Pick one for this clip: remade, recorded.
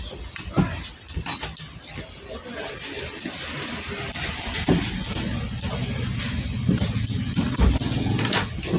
recorded